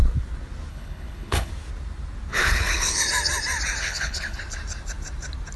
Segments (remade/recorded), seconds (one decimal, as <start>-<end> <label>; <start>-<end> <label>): 0.0-0.7 recorded; 0.7-1.5 remade; 1.5-2.3 recorded; 2.3-3.0 remade; 3.0-3.8 recorded; 3.8-4.4 remade; 4.4-5.6 recorded